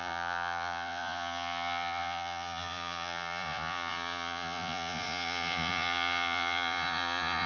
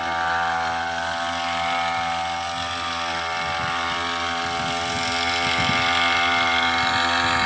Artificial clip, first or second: first